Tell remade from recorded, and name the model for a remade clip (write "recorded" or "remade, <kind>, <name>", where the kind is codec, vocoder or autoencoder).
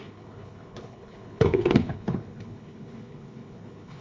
remade, codec, HILCodec